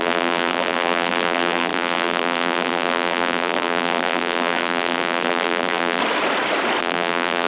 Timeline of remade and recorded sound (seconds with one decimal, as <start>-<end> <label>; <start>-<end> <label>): 0.0-6.0 remade; 6.0-6.8 recorded; 6.8-7.5 remade